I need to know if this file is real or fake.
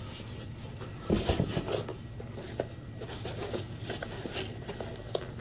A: real